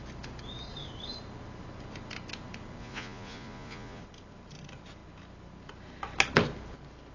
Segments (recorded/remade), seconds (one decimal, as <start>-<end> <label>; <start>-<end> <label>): 0.0-2.8 recorded; 2.8-4.0 remade; 4.0-7.1 recorded